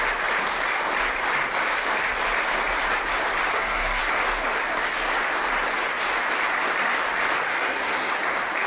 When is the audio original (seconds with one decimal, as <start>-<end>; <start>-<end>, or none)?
0.0-3.5; 4.0-7.5; 8.1-8.7